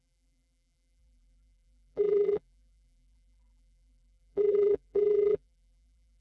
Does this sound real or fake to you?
fake